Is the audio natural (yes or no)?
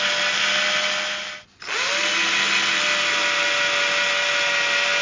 yes